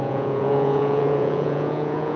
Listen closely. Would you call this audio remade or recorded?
remade